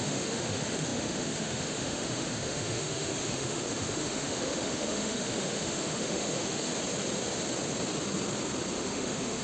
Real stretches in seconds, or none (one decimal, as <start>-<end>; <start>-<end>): 6.7-8.7